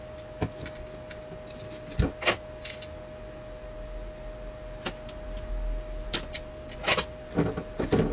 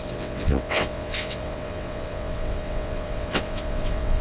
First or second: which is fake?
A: second